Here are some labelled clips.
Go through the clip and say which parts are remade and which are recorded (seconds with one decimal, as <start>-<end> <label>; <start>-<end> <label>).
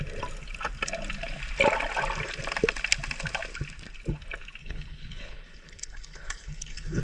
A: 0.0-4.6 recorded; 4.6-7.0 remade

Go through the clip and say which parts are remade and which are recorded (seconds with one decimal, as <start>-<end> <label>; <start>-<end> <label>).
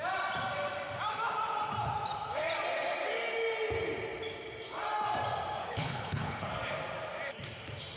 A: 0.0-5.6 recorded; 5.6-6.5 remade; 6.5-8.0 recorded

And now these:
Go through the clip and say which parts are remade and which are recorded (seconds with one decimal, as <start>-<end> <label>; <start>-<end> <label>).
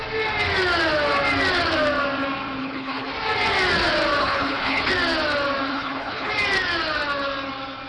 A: 0.0-2.6 recorded; 2.6-3.1 remade; 3.1-4.2 recorded; 4.2-4.9 remade; 4.9-5.7 recorded; 5.7-6.3 remade; 6.3-7.9 recorded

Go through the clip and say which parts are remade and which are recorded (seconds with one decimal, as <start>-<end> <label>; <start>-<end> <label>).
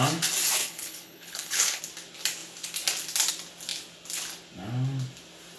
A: 0.0-0.6 recorded; 0.6-1.8 remade; 1.8-5.6 recorded